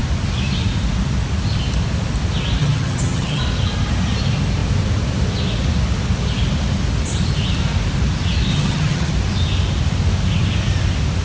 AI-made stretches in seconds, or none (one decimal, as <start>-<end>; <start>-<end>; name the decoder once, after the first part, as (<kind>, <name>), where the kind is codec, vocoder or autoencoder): 2.6-3.4 (vocoder, HiFi-GAN); 8.5-9.1